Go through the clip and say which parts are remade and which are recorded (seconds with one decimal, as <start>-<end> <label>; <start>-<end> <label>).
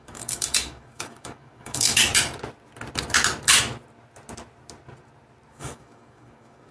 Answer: 0.0-2.1 remade; 2.1-5.5 recorded; 5.5-6.7 remade